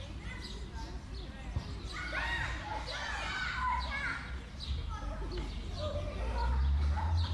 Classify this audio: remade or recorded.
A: recorded